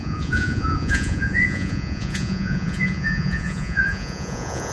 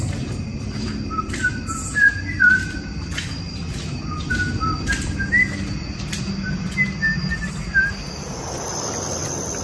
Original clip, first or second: second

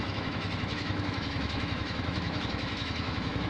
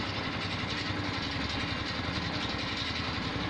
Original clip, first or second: second